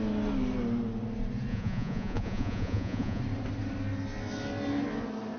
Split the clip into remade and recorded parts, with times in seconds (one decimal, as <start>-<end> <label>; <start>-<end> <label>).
0.0-1.5 recorded; 1.5-3.2 remade; 3.2-5.4 recorded